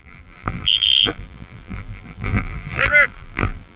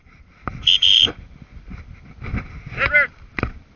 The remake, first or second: first